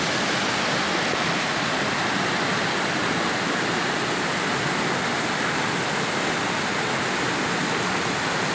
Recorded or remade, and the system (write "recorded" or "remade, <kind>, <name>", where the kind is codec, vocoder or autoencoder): recorded